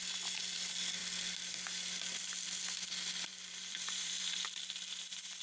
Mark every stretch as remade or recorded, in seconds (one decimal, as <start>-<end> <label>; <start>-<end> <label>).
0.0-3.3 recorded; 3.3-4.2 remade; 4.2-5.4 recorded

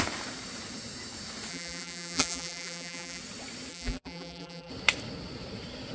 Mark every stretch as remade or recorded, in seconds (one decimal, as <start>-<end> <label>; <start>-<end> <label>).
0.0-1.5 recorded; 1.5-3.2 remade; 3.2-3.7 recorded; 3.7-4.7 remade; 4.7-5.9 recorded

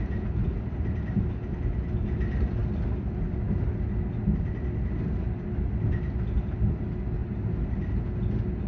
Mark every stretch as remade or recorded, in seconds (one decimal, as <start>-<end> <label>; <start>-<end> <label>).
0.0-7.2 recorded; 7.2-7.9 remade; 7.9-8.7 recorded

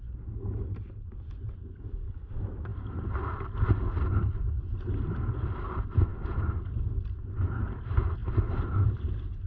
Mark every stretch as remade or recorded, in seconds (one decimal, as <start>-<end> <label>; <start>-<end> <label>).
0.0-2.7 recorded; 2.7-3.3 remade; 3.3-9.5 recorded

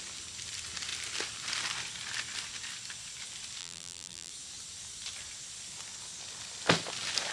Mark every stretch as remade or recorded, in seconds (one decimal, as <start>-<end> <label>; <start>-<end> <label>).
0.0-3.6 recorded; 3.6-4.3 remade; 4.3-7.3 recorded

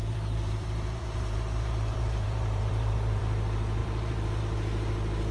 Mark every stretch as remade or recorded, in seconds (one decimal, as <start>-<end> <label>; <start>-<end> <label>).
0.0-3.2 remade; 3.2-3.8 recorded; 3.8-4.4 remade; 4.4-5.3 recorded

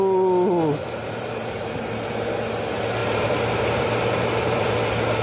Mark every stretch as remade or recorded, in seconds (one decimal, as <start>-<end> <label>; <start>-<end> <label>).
0.0-0.8 recorded; 0.8-1.6 remade; 1.6-3.0 recorded; 3.0-4.7 remade; 4.7-5.2 recorded

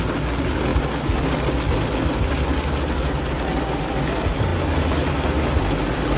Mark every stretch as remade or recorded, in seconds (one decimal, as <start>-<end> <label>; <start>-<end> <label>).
0.0-6.2 recorded